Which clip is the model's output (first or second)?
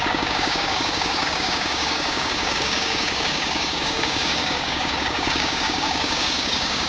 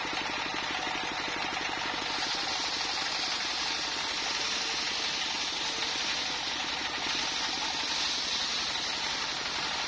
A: first